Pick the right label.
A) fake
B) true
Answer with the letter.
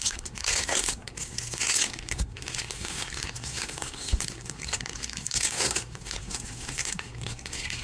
A